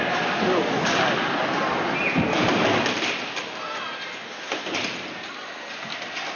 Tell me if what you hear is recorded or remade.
recorded